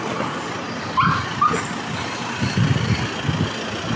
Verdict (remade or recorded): recorded